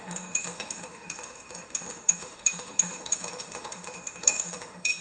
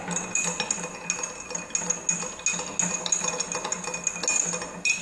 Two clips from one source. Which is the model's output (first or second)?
first